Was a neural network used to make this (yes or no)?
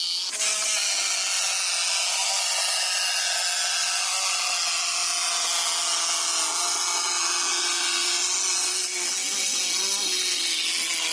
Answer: no